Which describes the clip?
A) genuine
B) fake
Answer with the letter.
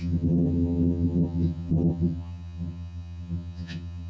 B